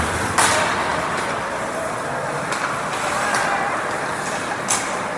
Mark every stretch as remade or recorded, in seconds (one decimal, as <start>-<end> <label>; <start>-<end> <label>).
0.0-5.2 recorded